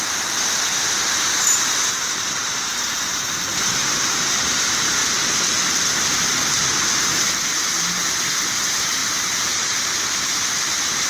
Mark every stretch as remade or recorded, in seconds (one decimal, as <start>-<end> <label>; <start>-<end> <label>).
0.0-5.0 remade; 5.0-6.5 recorded; 6.5-11.1 remade